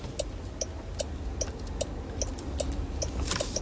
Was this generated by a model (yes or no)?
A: no